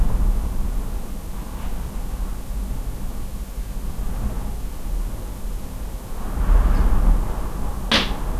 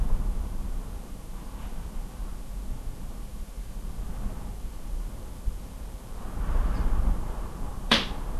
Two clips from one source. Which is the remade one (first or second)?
second